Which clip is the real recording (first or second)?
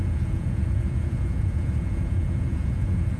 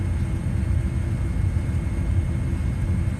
second